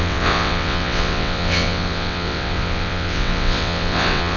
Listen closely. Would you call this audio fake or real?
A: fake